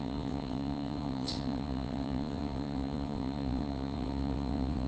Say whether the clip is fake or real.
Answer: fake